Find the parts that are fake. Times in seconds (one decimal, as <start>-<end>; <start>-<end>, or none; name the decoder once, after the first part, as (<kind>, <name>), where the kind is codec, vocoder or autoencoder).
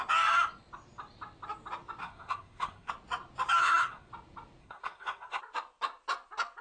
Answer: 2.0-2.9 (codec, SNAC); 3.6-4.1; 4.6-5.4